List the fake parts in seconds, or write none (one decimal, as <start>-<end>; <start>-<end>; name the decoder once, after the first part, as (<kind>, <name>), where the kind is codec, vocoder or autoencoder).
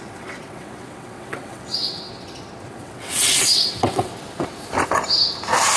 0.0-2.1 (vocoder, WaveNeXt); 2.7-4.1